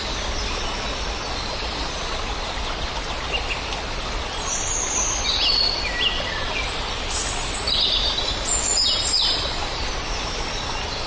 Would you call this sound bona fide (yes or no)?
yes